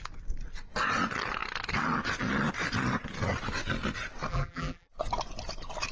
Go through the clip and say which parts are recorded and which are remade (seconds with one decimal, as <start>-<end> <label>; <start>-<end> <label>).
0.0-4.3 recorded; 4.3-4.9 remade; 4.9-5.9 recorded